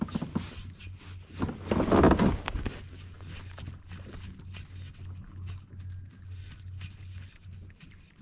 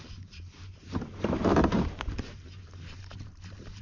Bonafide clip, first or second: first